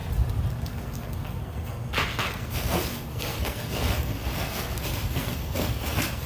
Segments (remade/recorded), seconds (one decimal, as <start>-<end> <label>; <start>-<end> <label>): 0.0-0.5 recorded; 0.5-6.3 remade